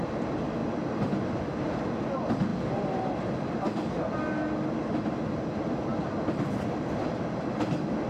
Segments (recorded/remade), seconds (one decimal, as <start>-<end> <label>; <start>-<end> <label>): 0.0-0.6 recorded; 0.6-1.2 remade; 1.2-2.5 recorded; 2.5-3.9 remade; 3.9-5.9 recorded; 5.9-6.8 remade; 6.8-8.1 recorded